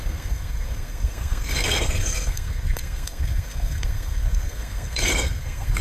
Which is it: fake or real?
fake